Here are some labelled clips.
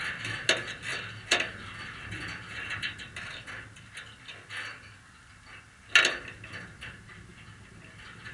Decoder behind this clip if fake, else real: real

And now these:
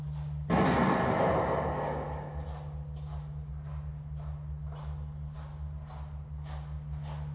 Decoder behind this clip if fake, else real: real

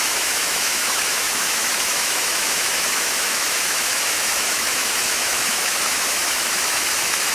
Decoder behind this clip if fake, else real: fake, autoencoder, DAC-VAE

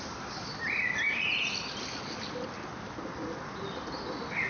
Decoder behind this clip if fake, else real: real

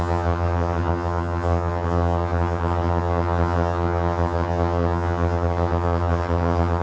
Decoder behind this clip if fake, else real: fake, vocoder, HiFi-GAN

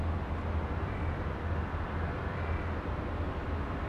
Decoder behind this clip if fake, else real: real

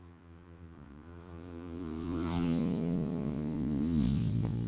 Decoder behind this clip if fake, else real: fake, vocoder, Vocos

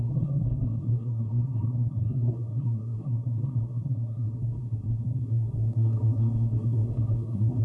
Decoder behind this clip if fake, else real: fake, codec, SNAC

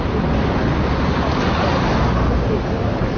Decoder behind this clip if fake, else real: real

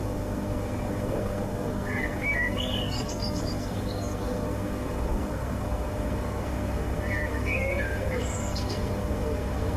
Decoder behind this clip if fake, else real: fake, codec, SNAC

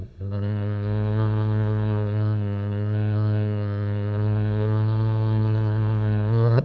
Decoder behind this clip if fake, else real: fake, codec, SNAC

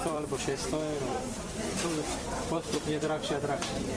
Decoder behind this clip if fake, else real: fake, vocoder, BigVGAN v2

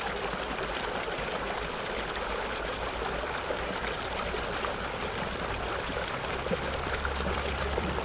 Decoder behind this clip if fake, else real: fake, vocoder, BigVGAN v2